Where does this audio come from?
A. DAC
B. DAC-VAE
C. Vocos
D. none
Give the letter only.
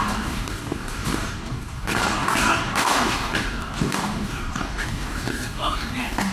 A